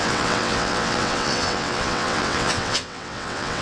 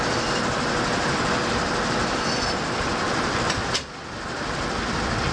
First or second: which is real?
second